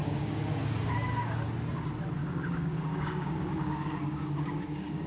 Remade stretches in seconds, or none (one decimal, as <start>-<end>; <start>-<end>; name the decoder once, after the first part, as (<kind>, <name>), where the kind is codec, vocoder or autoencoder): 0.0-0.6 (codec, DAC); 2.2-5.1